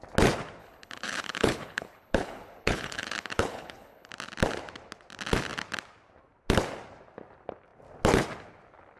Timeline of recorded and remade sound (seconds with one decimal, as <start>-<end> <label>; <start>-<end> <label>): 0.0-0.6 recorded; 0.6-4.1 remade; 4.1-9.0 recorded